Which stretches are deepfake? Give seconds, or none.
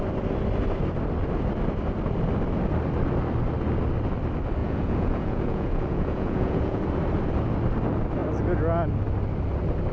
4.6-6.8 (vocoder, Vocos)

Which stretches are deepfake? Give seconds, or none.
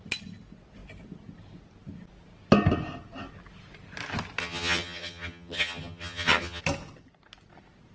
4.4-6.6 (vocoder, HiFi-GAN)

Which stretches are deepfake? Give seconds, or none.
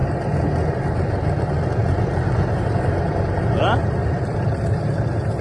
0.0-3.1 (vocoder, BigVGAN v2); 4.0-4.8